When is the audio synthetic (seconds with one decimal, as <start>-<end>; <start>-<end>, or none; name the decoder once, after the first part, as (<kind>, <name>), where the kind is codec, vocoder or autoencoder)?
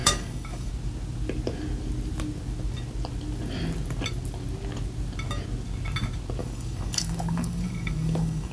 0.0-0.7 (codec, DAC); 6.4-8.5